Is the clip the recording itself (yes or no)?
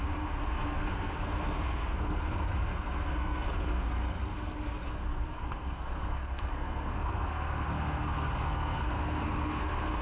no